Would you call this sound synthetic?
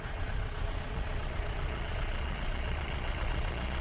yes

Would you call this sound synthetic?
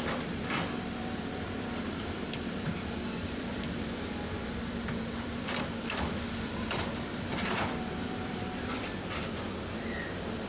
yes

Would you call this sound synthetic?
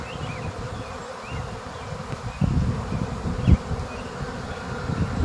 no